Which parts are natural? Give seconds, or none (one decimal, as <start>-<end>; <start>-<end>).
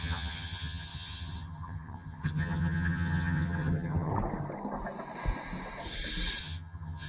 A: 4.1-6.4